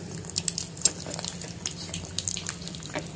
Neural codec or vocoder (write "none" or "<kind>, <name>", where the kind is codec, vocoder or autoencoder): none